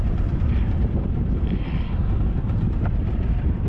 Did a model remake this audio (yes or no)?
no